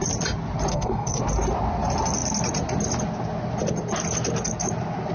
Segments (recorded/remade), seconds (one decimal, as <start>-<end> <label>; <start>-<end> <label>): 0.0-0.7 recorded; 0.7-1.2 remade; 1.2-5.1 recorded